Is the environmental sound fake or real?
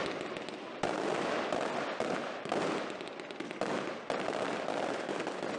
real